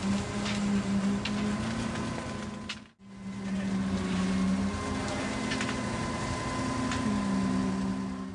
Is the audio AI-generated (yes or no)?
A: no